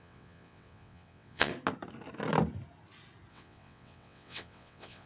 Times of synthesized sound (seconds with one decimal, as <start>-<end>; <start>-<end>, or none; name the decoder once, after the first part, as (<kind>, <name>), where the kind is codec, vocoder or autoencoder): 0.0-1.5 (vocoder, WaveNeXt); 3.3-5.1